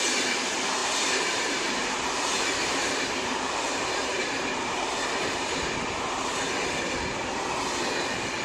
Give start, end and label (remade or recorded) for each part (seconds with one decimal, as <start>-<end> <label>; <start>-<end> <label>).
0.0-0.8 recorded; 0.8-3.6 remade; 3.6-4.1 recorded; 4.1-6.3 remade; 6.3-8.4 recorded